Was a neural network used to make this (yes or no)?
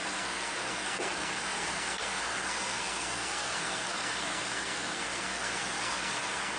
yes